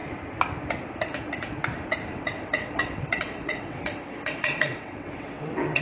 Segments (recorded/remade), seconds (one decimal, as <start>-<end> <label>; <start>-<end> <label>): 0.0-2.1 recorded; 2.1-5.8 remade